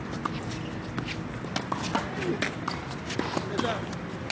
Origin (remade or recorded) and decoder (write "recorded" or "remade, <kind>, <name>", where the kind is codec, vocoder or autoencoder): recorded